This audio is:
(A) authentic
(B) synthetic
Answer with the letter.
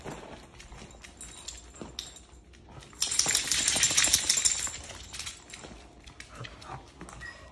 A